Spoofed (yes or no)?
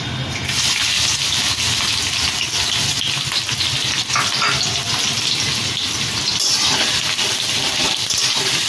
no